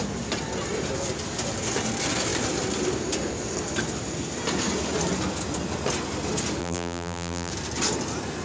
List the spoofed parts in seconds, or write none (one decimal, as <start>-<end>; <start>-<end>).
6.6-7.5